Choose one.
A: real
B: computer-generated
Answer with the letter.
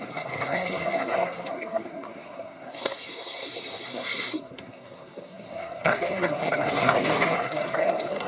B